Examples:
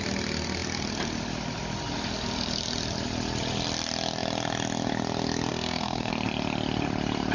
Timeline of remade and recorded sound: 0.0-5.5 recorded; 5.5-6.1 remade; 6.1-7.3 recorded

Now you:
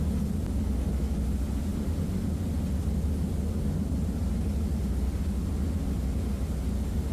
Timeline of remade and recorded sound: 0.0-7.1 recorded

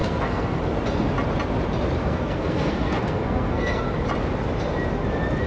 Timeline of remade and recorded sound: 0.0-0.6 remade; 0.6-2.0 recorded; 2.0-3.8 remade; 3.8-5.5 recorded

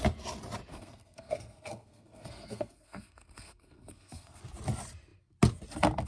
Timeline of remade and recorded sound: 0.0-0.7 recorded; 0.7-4.4 remade; 4.4-6.1 recorded

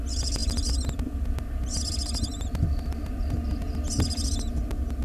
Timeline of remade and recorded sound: 0.0-5.0 recorded